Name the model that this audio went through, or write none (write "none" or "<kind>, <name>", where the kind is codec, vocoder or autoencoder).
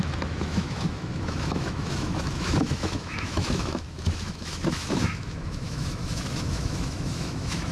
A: autoencoder, DAC-VAE